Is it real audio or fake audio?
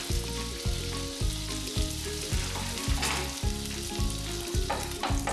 real